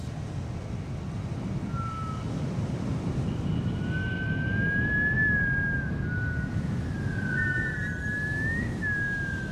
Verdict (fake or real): real